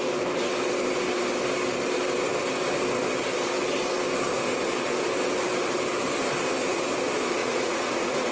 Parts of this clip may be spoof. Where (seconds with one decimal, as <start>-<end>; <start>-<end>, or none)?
7.4-8.3